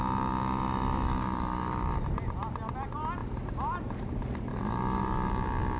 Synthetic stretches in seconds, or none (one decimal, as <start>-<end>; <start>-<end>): none